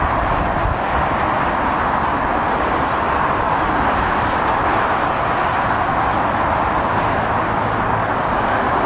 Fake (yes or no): no